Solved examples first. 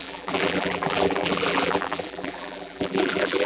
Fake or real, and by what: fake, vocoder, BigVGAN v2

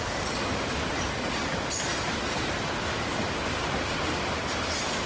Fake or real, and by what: real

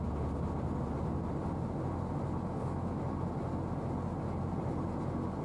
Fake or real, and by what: real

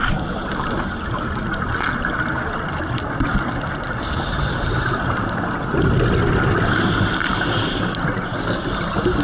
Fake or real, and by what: real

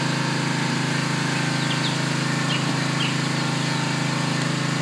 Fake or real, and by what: real